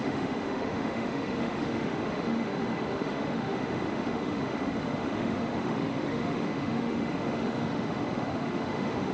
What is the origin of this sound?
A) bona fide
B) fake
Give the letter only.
B